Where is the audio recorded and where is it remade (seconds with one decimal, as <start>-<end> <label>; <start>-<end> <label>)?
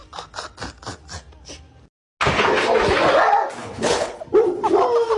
0.0-3.6 recorded; 3.6-4.2 remade; 4.2-5.2 recorded